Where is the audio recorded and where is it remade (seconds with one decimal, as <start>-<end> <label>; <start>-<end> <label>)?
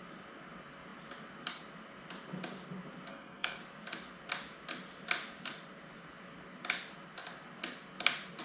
0.0-3.1 recorded; 3.1-3.6 remade; 3.6-8.4 recorded